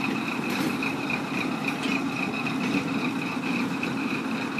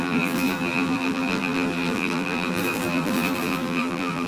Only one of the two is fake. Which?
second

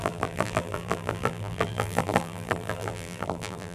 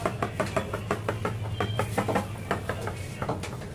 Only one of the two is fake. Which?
first